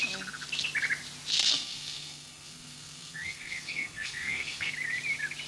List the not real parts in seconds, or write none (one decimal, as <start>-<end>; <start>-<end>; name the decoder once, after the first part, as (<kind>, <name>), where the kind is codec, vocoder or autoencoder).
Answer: 1.4-4.7 (codec, SNAC)